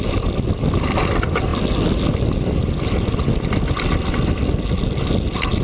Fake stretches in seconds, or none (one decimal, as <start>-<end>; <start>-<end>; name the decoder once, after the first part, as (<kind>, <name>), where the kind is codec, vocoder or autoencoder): none